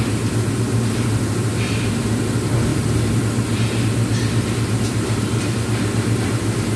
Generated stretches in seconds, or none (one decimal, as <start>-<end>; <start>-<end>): none